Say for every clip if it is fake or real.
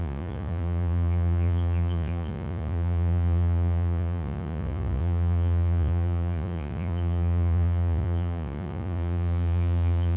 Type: fake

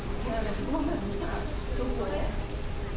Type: real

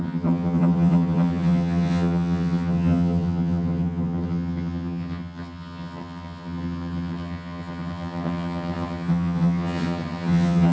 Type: fake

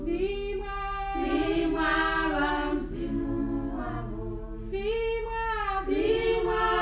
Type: real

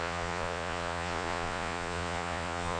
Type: fake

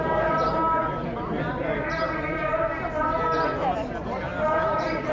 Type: real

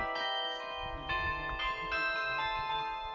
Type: real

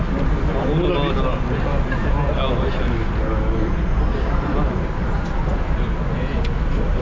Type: real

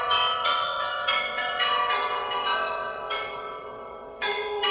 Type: fake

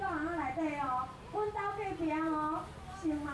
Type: real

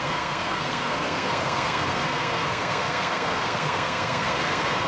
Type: fake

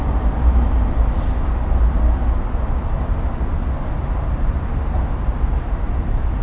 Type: real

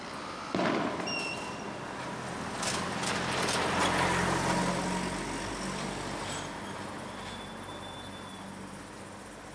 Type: real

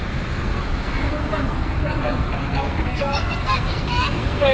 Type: fake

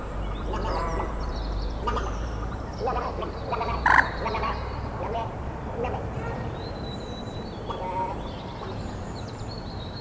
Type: fake